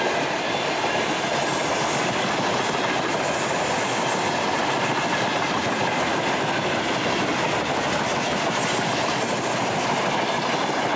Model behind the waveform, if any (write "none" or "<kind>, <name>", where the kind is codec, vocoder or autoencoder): none